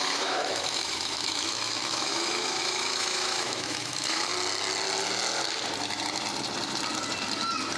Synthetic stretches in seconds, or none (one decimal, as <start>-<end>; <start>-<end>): 0.0-4.3